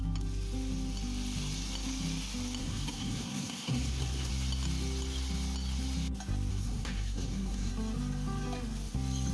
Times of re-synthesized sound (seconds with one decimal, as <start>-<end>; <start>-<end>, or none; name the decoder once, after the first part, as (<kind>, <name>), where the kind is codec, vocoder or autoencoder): 2.6-4.3 (codec, SNAC); 6.5-7.7